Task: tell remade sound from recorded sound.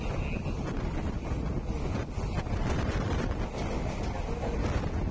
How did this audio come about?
recorded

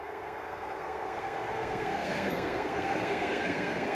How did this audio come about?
remade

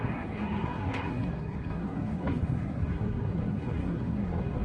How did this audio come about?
remade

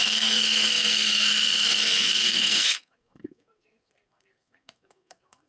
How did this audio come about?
remade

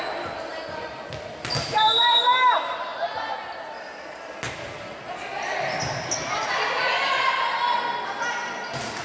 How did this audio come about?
recorded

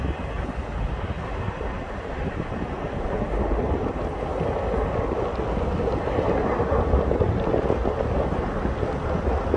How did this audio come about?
recorded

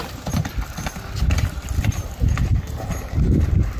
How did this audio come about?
recorded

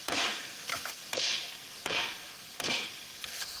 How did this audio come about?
remade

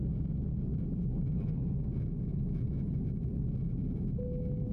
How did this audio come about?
recorded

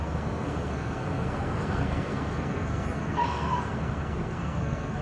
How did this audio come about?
remade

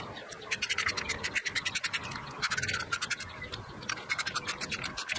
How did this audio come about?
recorded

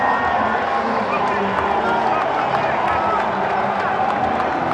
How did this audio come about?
recorded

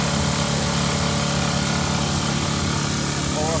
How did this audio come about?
recorded